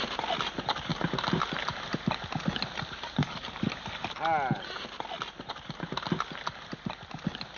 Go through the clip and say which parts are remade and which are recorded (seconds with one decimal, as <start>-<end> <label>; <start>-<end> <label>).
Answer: 0.0-7.6 recorded